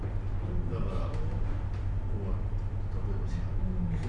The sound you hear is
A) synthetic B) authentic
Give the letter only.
B